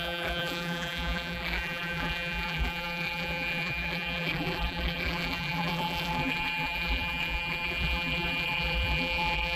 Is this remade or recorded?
remade